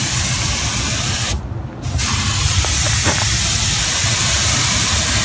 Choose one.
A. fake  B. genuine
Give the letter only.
B